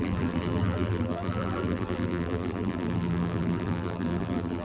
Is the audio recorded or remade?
remade